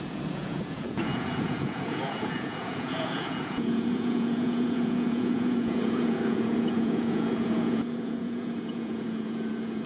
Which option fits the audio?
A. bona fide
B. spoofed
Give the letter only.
B